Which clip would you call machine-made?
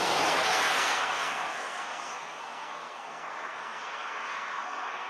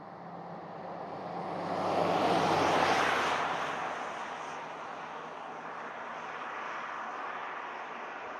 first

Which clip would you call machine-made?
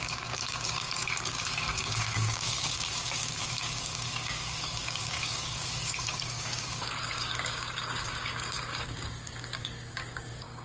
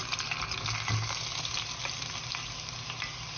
first